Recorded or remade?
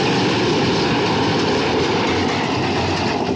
recorded